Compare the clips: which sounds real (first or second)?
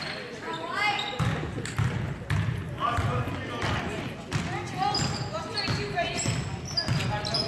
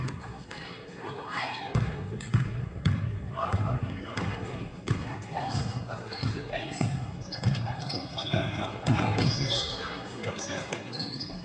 first